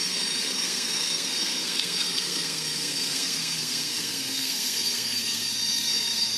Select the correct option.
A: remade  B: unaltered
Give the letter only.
A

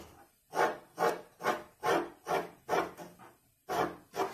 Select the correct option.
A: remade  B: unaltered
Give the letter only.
B